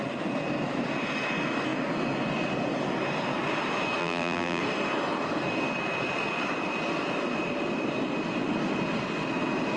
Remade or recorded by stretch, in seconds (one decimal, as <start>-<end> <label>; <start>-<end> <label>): 0.0-4.0 recorded; 4.0-4.6 remade; 4.6-9.8 recorded